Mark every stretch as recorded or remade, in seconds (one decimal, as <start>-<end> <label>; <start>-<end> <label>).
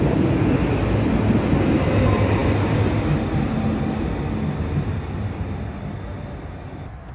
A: 0.0-7.1 recorded